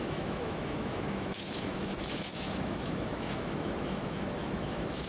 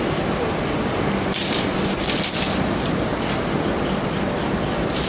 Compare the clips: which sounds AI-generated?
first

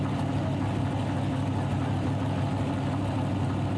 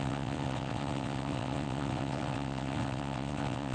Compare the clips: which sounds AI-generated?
second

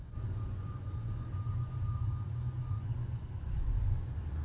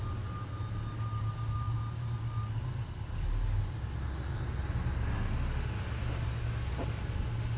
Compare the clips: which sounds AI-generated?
first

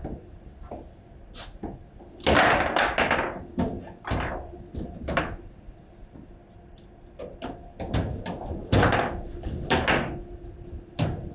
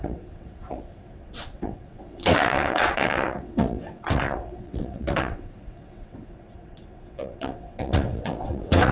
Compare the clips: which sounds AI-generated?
second